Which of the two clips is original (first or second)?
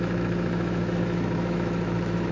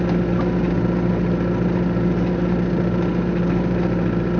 second